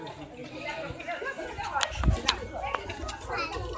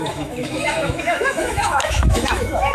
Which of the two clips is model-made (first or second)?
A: second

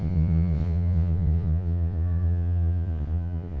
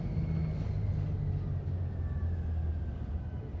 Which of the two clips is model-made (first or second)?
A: first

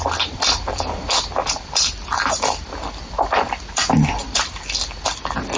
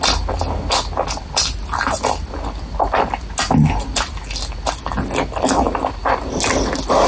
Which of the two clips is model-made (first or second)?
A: first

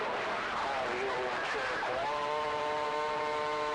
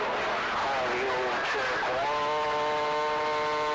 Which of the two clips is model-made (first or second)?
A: first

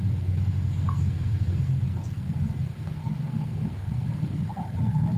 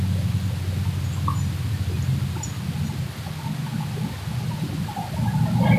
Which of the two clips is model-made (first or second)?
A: first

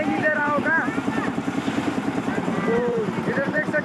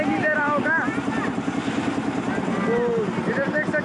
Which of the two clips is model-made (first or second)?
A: first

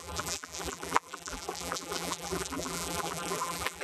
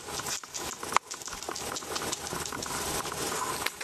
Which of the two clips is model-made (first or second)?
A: first